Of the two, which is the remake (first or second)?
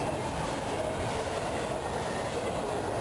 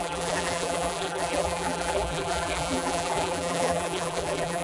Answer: second